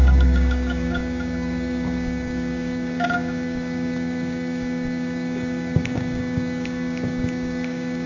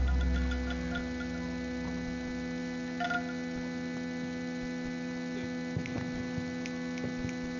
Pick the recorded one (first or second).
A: second